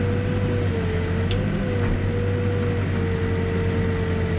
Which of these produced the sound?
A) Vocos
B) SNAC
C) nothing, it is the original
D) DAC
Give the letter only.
C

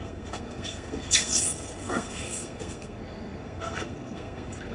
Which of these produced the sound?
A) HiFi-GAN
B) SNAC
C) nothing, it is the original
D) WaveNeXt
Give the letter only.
B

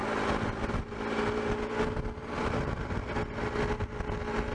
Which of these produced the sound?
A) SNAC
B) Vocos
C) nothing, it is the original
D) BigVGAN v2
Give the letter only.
C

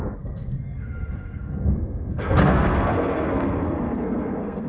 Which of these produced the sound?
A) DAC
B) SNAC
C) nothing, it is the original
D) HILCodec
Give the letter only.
B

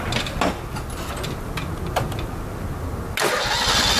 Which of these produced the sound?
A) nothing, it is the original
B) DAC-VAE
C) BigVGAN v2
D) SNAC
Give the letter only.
A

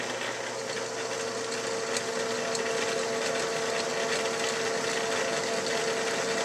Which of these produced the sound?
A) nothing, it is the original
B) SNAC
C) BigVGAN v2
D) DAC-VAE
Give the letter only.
A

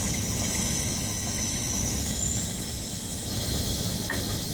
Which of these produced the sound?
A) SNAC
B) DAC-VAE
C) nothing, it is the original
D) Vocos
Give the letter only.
B